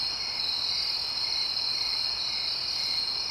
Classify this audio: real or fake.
real